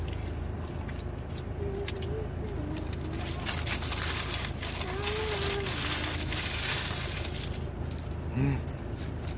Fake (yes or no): no